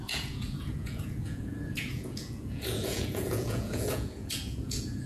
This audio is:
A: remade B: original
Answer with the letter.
A